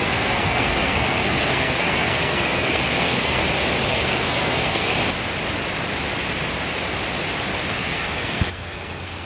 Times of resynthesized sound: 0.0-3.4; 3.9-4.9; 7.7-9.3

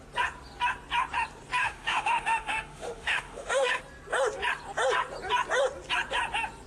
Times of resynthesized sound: 1.6-3.8

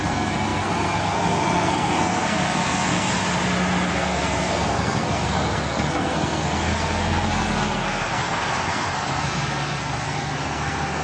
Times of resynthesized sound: 0.0-3.2; 3.9-11.0

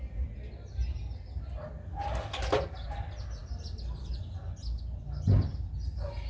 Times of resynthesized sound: none